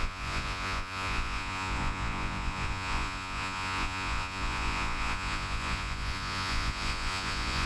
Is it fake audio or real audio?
fake